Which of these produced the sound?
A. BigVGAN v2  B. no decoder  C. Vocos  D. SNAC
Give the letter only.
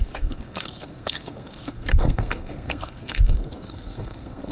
D